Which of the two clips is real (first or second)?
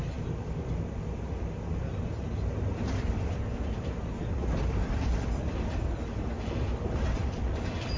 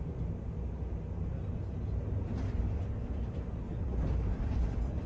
second